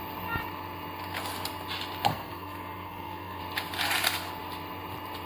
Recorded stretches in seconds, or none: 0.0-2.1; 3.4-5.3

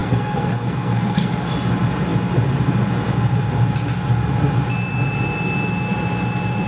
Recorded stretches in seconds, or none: 1.5-6.7

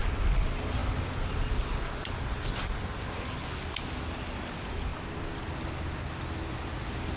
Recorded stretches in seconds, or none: 0.0-4.9; 5.6-7.2

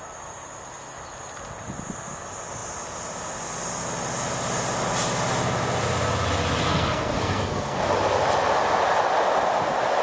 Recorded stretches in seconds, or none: 0.0-6.7; 7.8-10.0

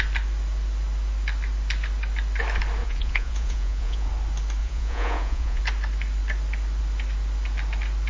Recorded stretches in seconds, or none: 0.0-2.8; 4.1-4.6; 5.6-8.1

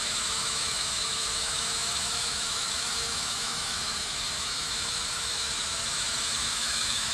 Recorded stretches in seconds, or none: none

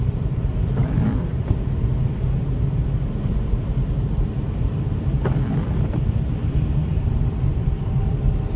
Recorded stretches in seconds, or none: none

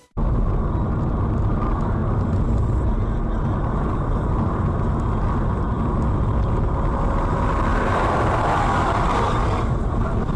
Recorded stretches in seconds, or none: 0.0-7.7; 9.4-10.4